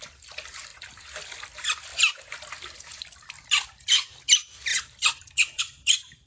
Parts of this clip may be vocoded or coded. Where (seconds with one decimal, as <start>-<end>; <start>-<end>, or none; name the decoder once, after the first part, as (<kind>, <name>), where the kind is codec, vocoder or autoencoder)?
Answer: 4.7-5.6 (vocoder, BigVGAN v2)